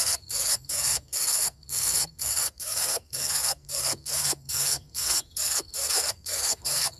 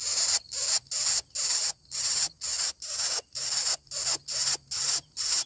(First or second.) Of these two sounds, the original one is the second